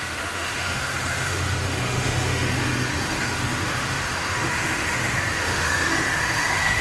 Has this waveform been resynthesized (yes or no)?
yes